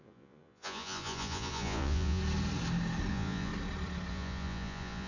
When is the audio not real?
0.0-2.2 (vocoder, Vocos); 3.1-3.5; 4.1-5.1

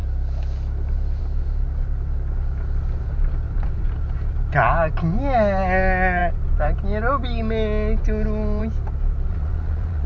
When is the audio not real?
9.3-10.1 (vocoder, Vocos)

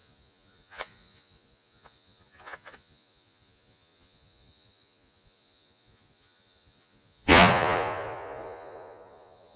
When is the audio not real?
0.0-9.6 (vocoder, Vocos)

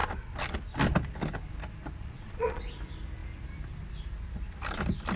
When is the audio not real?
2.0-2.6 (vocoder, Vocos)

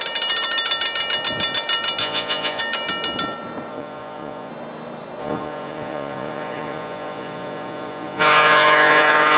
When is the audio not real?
2.0-2.6 (vocoder, Vocos); 3.7-4.5; 5.2-9.4